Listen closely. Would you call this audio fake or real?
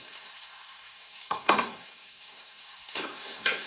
fake